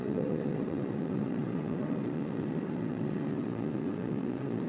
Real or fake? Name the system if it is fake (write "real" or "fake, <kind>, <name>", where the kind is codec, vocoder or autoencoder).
fake, vocoder, Vocos